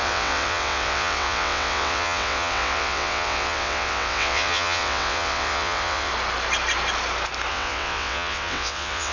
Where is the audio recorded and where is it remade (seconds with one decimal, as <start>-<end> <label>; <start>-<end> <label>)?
0.0-6.1 remade; 6.1-7.5 recorded; 7.5-9.1 remade